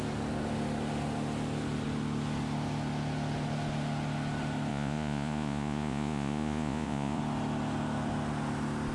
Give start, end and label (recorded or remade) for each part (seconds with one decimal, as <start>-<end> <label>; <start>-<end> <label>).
0.0-4.7 recorded; 4.7-7.2 remade; 7.2-8.9 recorded